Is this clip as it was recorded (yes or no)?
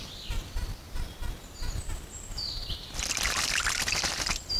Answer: yes